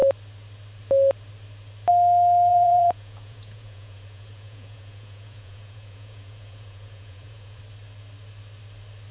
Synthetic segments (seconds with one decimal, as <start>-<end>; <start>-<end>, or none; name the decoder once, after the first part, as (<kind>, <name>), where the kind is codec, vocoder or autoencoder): 2.5-7.6 (vocoder, Vocos)